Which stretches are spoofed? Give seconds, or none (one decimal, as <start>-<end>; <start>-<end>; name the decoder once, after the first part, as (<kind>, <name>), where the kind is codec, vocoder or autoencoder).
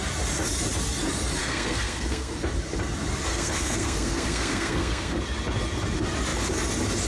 1.4-2.3 (codec, SNAC); 3.3-5.2